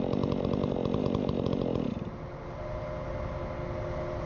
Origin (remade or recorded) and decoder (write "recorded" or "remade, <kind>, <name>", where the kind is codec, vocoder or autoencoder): recorded